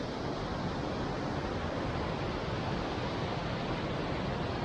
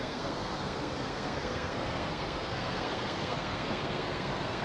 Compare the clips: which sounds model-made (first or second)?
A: second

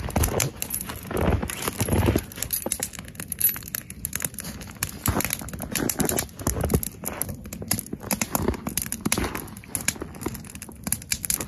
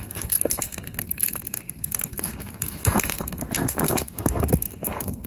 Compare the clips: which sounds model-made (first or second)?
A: second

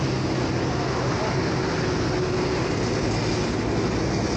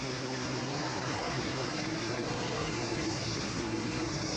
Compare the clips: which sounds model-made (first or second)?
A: second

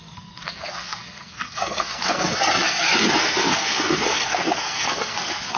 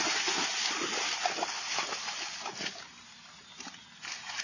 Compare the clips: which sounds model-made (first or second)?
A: first